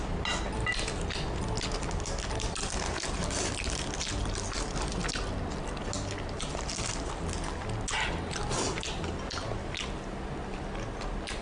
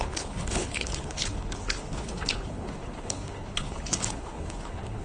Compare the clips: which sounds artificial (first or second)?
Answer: second